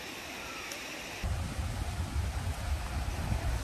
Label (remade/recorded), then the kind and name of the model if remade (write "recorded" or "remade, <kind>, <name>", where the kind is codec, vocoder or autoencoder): recorded